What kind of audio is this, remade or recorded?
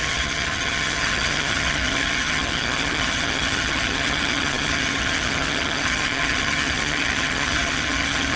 remade